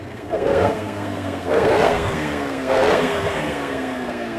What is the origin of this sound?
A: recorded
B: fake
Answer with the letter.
B